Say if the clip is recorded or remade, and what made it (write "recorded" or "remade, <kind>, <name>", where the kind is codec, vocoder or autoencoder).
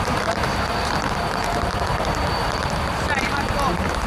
remade, vocoder, BigVGAN v2